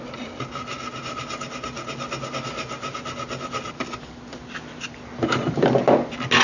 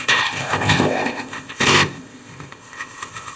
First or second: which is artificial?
second